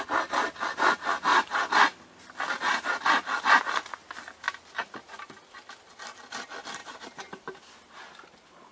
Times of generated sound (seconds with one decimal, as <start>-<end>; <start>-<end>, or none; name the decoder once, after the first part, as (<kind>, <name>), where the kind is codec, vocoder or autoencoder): 0.0-1.3 (vocoder, BigVGAN v2); 3.4-4.0; 4.6-6.8